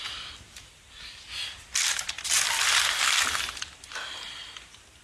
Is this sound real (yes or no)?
yes